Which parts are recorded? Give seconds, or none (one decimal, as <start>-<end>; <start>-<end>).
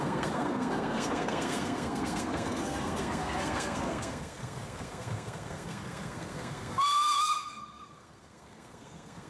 none